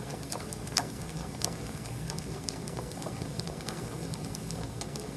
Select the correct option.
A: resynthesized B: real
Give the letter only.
A